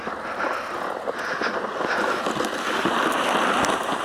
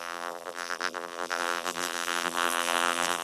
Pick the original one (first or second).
first